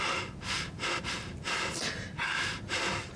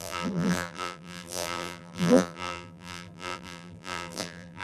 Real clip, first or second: first